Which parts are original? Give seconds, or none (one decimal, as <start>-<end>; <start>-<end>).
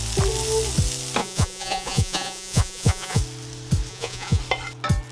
0.0-1.2; 3.2-3.9; 4.4-5.1